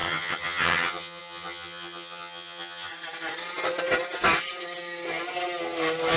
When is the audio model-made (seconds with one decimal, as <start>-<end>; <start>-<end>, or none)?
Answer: 0.0-2.9